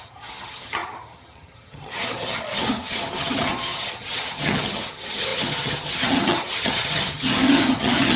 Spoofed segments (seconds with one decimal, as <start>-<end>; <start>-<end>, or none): 0.0-8.2